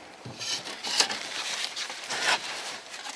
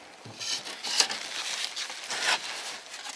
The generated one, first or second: first